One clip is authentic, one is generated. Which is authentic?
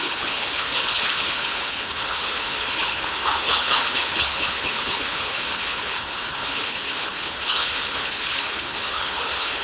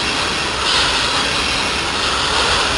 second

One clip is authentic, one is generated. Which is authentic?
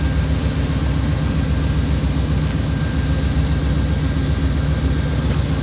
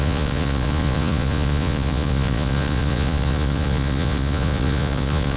first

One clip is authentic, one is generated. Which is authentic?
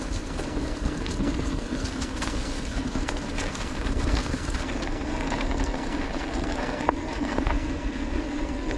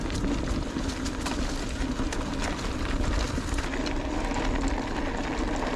second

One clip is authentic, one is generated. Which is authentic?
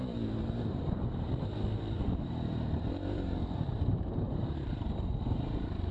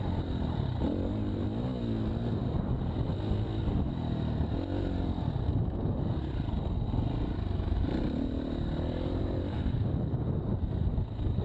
second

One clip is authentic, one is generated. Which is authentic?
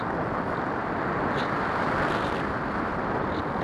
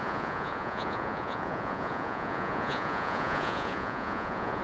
first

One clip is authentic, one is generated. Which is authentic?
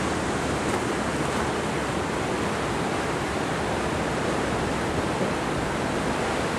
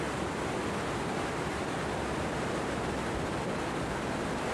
second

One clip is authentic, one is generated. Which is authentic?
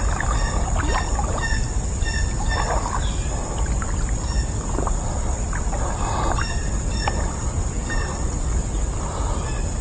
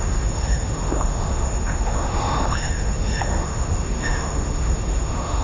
first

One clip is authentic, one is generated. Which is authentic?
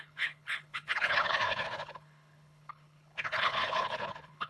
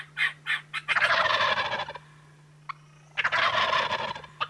second